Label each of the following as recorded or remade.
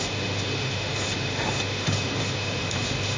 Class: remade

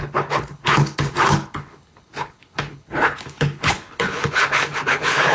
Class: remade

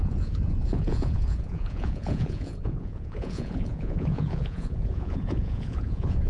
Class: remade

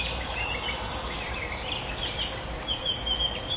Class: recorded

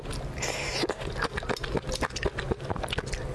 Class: recorded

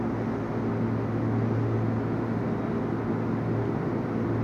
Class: recorded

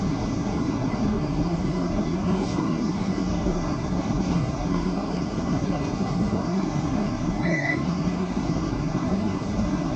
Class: remade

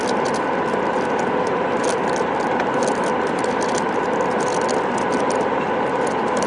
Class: recorded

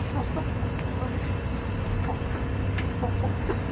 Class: recorded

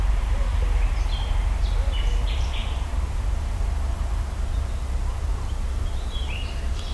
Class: remade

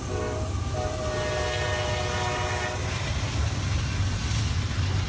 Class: recorded